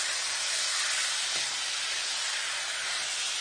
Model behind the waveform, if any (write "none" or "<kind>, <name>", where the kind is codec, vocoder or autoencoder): none